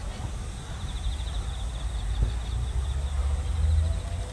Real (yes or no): yes